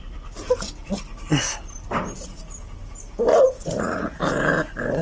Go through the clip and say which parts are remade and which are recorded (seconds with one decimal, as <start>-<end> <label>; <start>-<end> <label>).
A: 0.0-3.3 recorded; 3.3-4.2 remade; 4.2-5.0 recorded